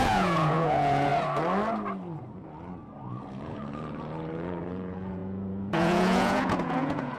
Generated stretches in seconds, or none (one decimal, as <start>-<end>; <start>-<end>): 0.0-1.1; 3.1-7.2